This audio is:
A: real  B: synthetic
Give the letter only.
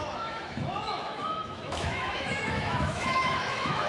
B